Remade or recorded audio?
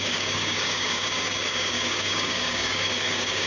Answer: remade